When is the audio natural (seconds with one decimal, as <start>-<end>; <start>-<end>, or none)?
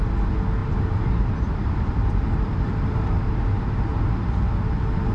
0.0-0.6; 3.3-5.1